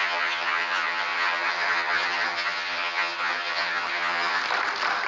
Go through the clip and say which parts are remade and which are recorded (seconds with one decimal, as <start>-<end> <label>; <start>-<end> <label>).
0.0-4.4 remade; 4.4-5.1 recorded